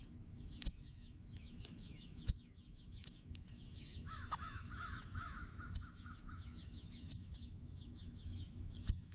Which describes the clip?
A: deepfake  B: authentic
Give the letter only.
A